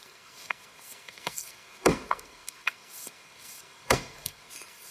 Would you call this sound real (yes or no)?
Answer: no